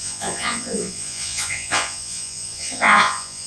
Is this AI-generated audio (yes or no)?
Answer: yes